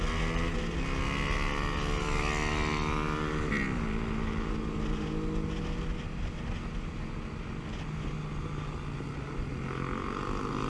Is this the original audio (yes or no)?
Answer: yes